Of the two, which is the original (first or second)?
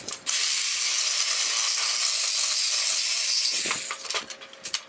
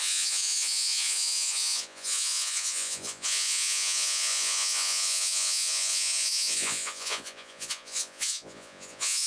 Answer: first